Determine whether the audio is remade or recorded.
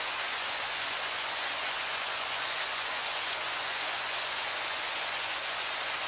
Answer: remade